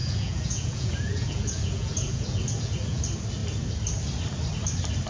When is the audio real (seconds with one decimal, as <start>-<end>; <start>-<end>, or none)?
3.0-5.1